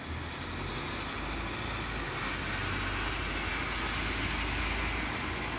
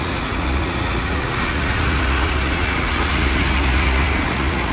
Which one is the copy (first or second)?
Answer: second